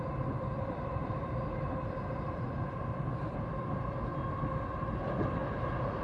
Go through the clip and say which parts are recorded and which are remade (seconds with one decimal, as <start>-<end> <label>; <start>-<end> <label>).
0.0-4.1 remade; 4.1-4.9 recorded; 4.9-5.4 remade; 5.4-6.0 recorded